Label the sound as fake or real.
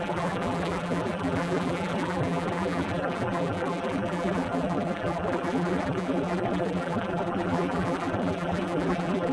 fake